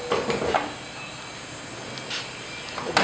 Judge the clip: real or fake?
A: real